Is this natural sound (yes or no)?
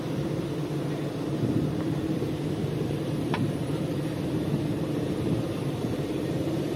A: no